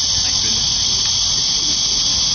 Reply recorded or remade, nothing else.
recorded